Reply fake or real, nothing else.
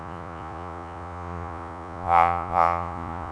fake